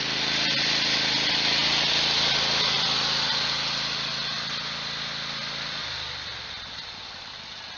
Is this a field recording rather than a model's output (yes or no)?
yes